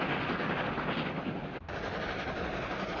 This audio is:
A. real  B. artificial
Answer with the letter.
A